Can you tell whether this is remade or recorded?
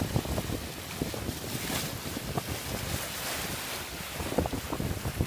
recorded